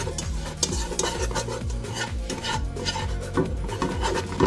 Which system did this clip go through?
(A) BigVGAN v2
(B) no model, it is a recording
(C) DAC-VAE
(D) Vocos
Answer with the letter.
B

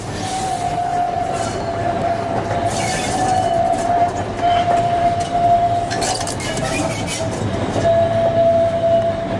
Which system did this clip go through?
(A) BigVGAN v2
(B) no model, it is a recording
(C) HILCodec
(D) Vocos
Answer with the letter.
B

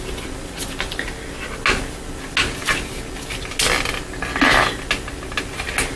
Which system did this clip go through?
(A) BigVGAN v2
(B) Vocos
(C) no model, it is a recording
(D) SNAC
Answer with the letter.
C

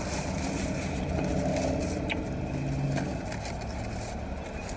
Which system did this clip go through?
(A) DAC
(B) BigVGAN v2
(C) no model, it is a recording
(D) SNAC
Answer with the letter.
C